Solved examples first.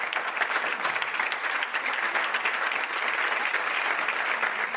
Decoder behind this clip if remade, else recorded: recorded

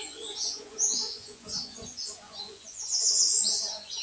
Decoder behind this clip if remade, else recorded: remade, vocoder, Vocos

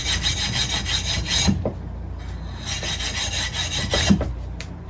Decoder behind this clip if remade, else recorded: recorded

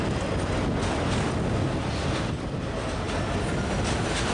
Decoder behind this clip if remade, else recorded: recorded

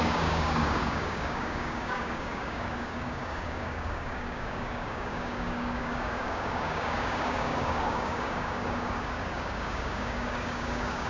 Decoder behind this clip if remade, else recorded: remade, codec, DAC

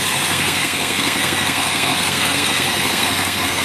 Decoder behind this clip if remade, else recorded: remade, codec, SNAC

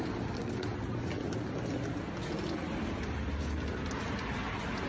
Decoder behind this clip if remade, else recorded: recorded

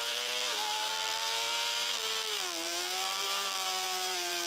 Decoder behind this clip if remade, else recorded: remade, vocoder, BigVGAN v2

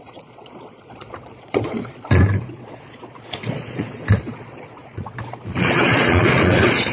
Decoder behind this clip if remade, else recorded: remade, vocoder, Vocos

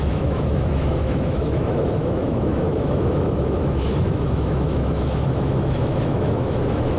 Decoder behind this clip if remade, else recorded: remade, autoencoder, DAC-VAE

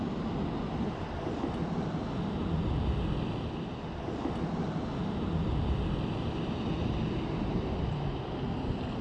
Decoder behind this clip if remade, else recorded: recorded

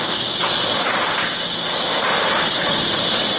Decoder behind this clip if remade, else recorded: remade, vocoder, BigVGAN v2